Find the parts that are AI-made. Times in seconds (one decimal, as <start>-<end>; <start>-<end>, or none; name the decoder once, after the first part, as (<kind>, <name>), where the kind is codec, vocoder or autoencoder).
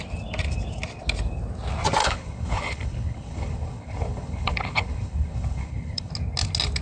2.0-6.1 (codec, HILCodec)